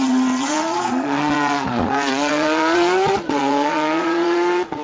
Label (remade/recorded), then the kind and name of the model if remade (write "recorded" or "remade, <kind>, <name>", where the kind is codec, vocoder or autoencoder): remade, vocoder, Vocos